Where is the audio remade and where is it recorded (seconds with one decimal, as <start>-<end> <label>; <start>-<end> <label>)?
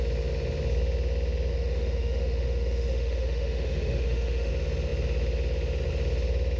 0.0-1.5 recorded; 1.5-4.5 remade; 4.5-6.6 recorded